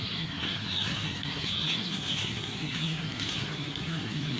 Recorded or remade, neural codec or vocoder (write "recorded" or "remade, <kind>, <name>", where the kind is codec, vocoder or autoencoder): remade, codec, SNAC